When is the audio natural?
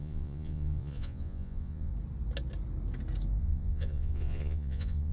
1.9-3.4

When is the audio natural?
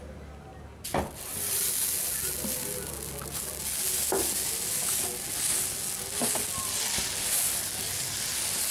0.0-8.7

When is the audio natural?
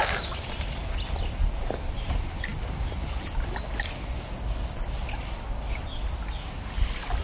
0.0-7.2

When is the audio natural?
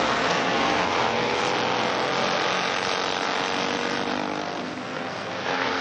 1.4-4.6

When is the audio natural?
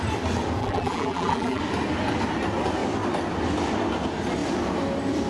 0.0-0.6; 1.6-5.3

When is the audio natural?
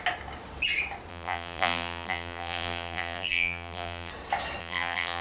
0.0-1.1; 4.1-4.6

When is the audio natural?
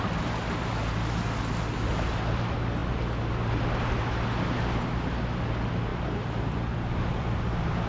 0.0-7.9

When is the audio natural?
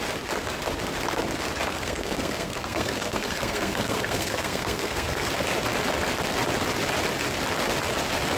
0.0-1.7; 5.3-8.4